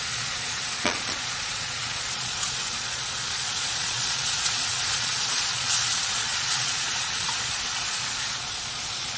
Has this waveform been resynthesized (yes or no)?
yes